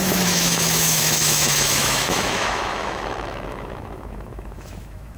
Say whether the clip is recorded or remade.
remade